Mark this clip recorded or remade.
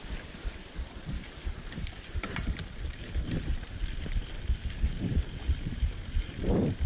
remade